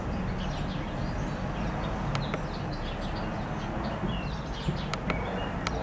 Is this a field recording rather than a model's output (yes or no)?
yes